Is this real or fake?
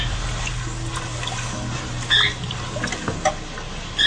real